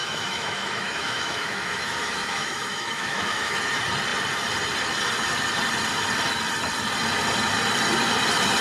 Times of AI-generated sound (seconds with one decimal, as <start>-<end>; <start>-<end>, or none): 0.0-3.6